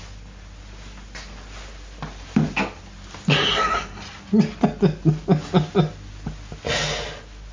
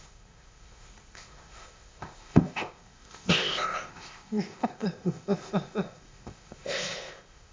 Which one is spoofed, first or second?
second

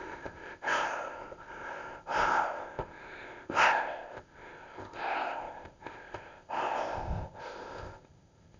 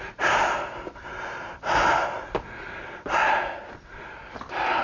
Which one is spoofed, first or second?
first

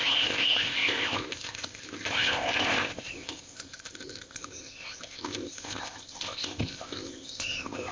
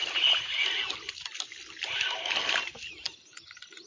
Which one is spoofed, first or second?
first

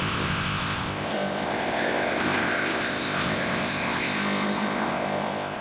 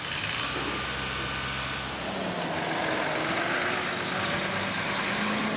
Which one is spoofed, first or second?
first